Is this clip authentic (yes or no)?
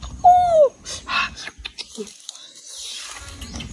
yes